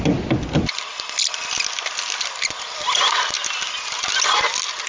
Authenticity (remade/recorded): recorded